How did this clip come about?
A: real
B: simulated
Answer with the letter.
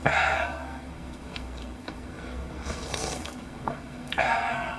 B